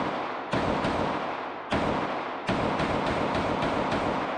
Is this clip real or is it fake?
real